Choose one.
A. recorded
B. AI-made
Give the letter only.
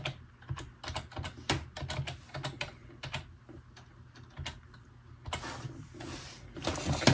A